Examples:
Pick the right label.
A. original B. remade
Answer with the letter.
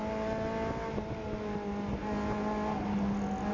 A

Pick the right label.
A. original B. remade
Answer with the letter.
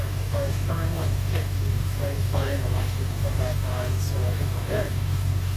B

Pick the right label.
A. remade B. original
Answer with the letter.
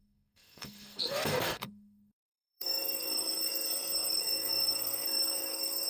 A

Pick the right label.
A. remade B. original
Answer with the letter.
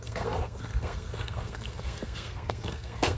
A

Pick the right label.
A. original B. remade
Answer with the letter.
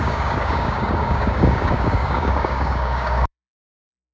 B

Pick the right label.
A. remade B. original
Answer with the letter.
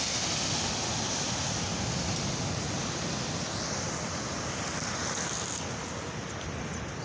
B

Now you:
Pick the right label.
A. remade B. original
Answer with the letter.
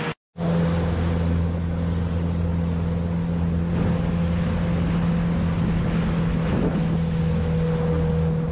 B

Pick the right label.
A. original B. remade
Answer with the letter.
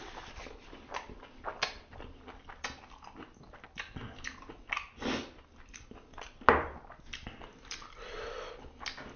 A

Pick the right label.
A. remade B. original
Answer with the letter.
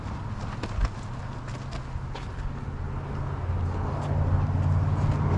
B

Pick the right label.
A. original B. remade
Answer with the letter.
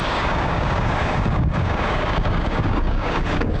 B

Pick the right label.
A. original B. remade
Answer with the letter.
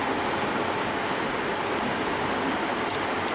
A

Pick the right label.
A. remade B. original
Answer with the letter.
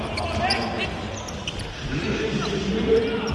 B